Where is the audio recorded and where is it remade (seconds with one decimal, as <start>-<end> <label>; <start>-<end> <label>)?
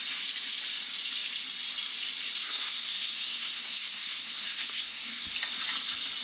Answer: 0.0-2.4 recorded; 2.4-5.3 remade; 5.3-6.2 recorded